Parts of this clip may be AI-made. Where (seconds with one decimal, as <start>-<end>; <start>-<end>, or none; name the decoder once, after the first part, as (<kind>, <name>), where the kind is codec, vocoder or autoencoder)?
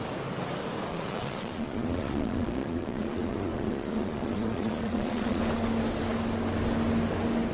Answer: 0.9-5.4 (vocoder, Vocos)